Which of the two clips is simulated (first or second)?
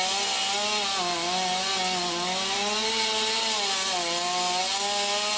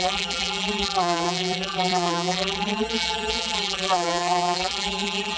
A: second